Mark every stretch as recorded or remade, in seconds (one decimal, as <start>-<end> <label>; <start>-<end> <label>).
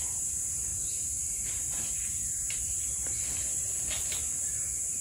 0.0-0.7 recorded; 0.7-3.7 remade; 3.7-5.0 recorded